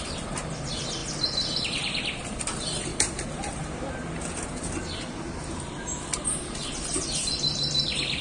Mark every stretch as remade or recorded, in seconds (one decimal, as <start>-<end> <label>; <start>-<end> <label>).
0.0-1.0 remade; 1.0-1.6 recorded; 1.6-2.9 remade; 2.9-6.3 recorded; 6.3-8.2 remade